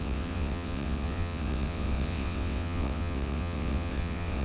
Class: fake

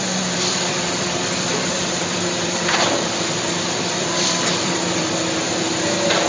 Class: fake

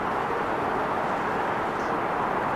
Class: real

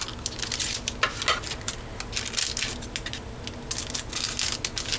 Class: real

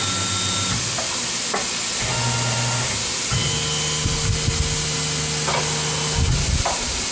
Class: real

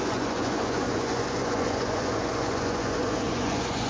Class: fake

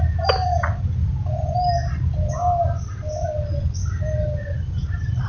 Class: real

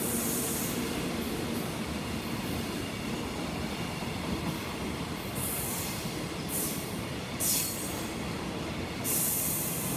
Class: fake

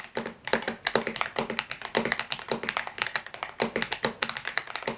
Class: real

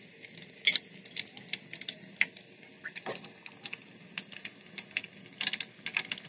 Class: real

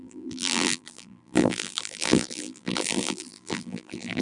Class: fake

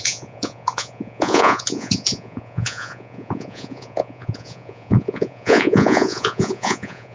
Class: fake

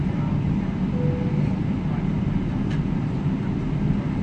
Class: real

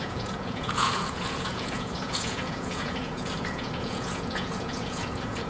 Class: fake